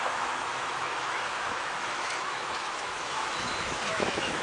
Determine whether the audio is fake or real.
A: fake